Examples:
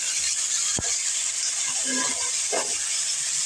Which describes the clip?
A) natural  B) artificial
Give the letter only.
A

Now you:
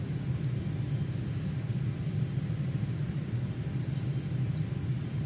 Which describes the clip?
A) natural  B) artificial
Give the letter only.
A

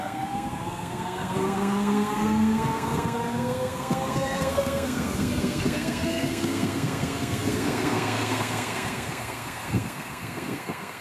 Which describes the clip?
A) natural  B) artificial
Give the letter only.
B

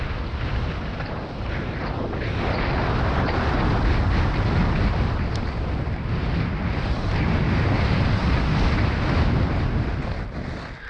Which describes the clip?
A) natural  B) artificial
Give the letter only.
A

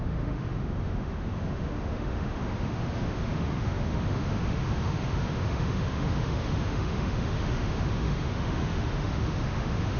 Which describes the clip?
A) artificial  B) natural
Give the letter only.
A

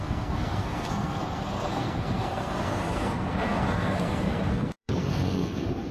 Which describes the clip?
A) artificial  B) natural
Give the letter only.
A